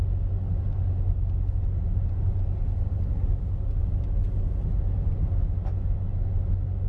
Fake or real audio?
real